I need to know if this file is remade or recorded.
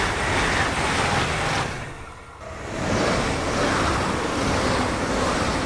recorded